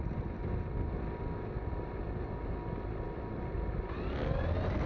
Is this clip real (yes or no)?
yes